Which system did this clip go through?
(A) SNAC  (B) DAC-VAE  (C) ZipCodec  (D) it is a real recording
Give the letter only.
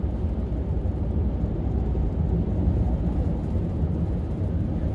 D